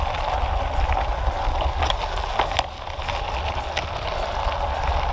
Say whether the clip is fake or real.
real